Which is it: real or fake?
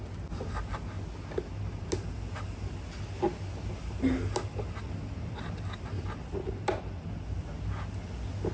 real